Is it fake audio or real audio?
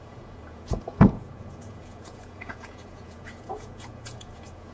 fake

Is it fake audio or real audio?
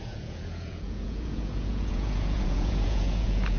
fake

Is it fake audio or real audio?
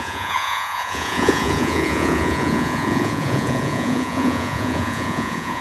fake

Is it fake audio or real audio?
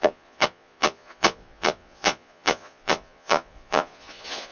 fake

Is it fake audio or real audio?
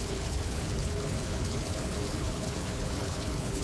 fake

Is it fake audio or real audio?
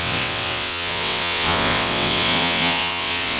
fake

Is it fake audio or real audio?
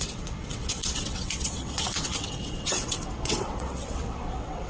fake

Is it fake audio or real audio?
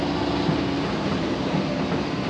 real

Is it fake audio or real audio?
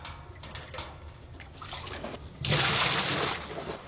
real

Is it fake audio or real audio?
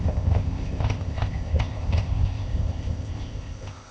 fake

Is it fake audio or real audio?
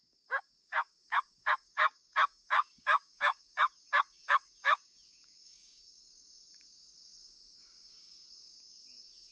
fake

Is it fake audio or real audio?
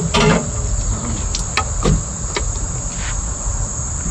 real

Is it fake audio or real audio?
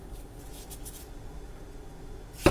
real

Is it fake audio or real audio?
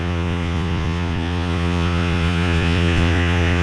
fake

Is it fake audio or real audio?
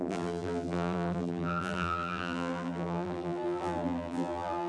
fake